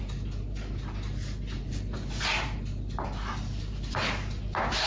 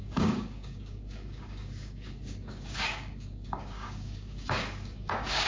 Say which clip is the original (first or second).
first